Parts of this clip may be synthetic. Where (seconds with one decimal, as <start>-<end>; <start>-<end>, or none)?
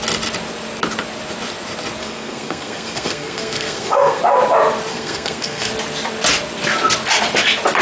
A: 2.0-4.2; 4.9-5.7